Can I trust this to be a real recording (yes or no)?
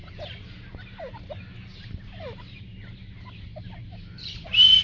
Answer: yes